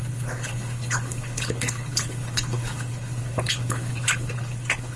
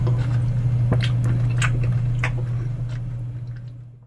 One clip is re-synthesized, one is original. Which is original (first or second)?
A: second